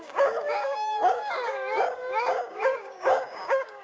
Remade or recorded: remade